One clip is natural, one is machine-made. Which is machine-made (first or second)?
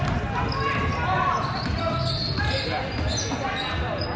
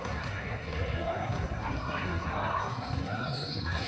second